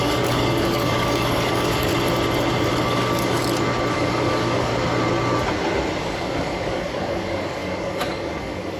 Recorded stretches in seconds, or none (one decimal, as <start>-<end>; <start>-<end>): 1.9-2.7; 3.4-3.9; 4.7-6.0